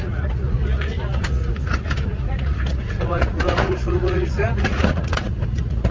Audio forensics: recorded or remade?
remade